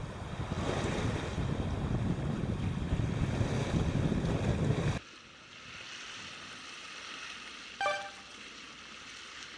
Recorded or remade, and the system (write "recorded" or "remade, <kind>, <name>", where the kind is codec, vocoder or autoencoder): recorded